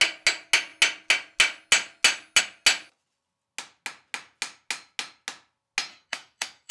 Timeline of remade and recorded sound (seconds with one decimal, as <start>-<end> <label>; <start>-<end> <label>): 0.0-5.9 recorded; 5.9-6.7 remade